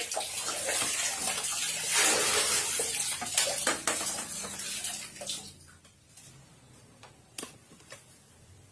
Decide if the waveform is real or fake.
real